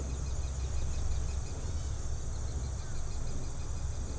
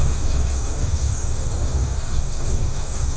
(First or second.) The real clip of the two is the first